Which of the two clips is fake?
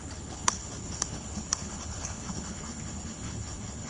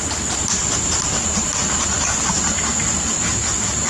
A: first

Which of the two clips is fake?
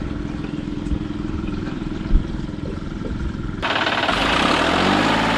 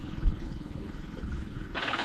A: second